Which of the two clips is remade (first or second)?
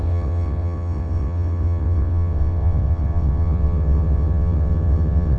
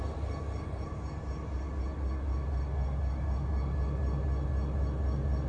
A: first